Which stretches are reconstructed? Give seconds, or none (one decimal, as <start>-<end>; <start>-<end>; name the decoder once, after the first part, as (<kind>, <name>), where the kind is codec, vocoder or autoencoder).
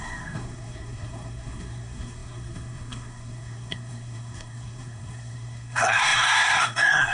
0.0-7.1 (codec, SNAC)